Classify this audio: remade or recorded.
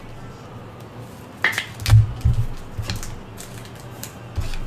recorded